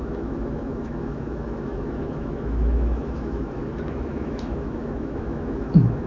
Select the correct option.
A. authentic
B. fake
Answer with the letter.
B